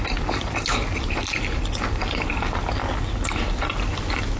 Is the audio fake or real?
real